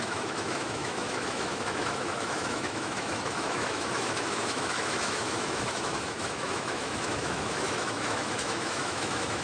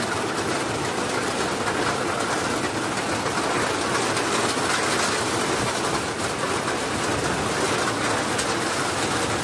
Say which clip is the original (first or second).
second